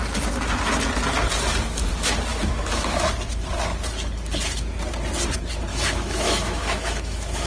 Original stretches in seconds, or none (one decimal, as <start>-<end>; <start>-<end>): 0.0-2.3; 3.1-5.7

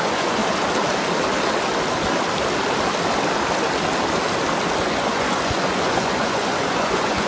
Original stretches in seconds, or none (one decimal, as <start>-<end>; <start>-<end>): 0.4-4.8

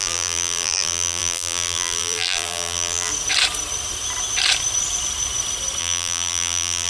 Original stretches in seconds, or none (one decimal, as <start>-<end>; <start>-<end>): 3.1-5.8